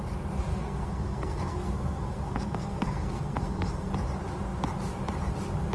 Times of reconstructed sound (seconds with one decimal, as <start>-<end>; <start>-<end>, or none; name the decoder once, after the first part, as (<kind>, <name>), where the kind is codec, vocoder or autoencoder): 0.5-3.9 (codec, SNAC)